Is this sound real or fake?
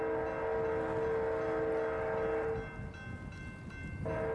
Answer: real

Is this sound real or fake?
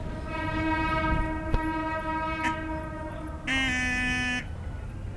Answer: real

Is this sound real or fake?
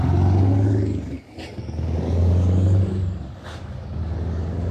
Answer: fake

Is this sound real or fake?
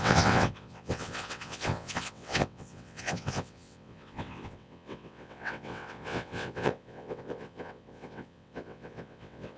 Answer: fake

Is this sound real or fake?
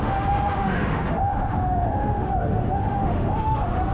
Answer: fake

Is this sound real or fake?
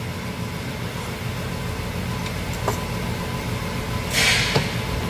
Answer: real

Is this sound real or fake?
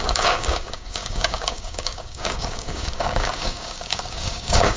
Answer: fake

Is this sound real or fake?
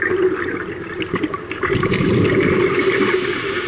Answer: real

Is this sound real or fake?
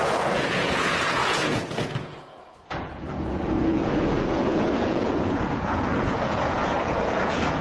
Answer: fake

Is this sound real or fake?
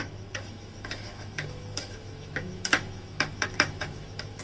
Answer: fake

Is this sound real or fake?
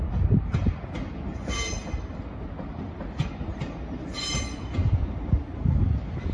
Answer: real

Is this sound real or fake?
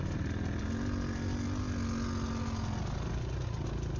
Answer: real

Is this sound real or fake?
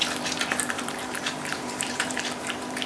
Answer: fake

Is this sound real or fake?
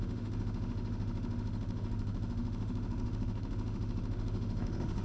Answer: fake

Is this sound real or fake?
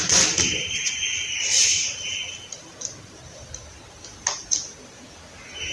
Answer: real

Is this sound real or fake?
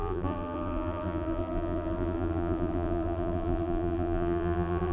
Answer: fake